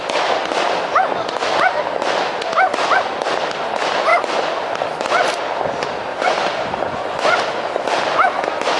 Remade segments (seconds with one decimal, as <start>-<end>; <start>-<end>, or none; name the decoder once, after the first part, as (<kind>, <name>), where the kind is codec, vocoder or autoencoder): 4.1-4.7 (vocoder, Vocos); 6.1-7.4

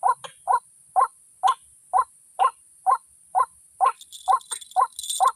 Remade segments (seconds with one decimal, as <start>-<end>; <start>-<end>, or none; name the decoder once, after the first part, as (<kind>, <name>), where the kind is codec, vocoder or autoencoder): none

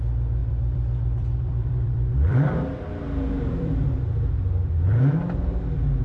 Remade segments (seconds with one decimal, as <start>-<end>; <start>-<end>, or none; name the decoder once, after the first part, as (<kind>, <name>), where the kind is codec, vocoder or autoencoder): 0.4-4.0 (vocoder, BigVGAN v2)